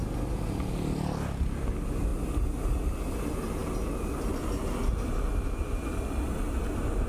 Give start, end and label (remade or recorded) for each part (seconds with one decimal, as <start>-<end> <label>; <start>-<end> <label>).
0.0-7.1 recorded